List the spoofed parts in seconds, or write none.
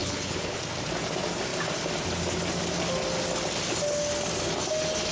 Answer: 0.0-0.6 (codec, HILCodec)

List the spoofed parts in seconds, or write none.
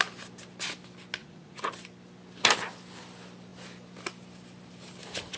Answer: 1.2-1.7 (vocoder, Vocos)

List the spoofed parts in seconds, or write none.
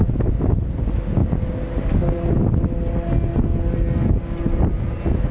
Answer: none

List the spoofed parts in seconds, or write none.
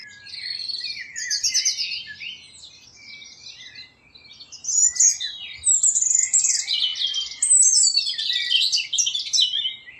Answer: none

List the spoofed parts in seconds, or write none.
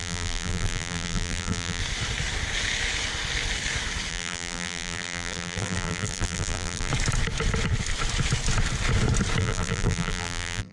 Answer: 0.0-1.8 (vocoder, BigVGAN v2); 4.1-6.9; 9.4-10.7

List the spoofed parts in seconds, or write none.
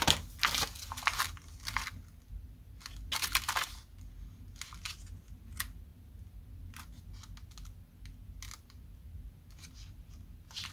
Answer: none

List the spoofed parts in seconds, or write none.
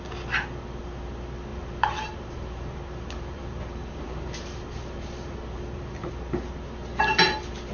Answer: 1.5-6.1 (vocoder, BigVGAN v2)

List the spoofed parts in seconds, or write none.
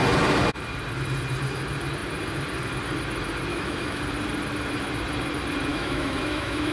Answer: 3.5-4.0 (autoencoder, DAC-VAE); 5.7-6.7